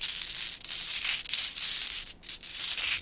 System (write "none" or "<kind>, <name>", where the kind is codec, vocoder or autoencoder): none